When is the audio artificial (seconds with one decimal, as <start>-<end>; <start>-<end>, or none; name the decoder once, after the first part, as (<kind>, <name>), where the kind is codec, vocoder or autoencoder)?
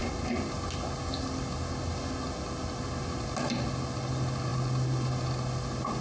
none